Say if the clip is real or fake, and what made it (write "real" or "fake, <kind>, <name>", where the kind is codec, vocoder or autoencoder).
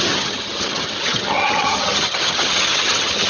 fake, vocoder, HiFi-GAN